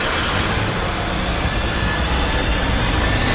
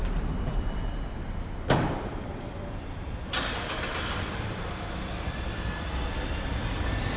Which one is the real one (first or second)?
first